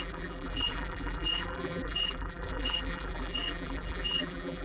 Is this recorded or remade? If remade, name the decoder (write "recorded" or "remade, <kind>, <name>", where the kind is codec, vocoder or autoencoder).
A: remade, vocoder, BigVGAN v2